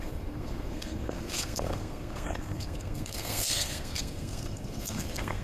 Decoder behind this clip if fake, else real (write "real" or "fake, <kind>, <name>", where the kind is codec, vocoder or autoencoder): fake, codec, SNAC